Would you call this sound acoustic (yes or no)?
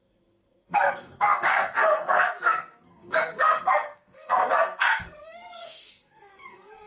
no